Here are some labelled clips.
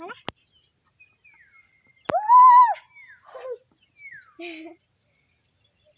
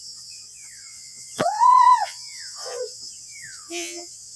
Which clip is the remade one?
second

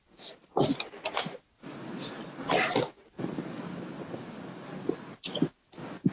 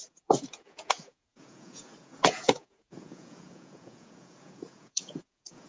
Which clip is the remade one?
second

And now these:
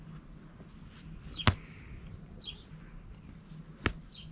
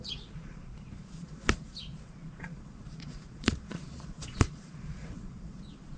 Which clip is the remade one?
second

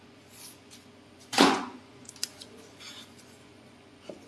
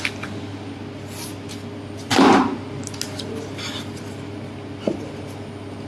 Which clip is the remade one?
first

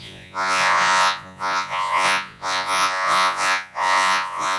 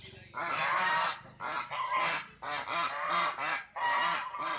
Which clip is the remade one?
first